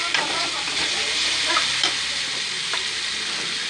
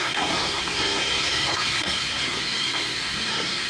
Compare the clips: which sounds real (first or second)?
first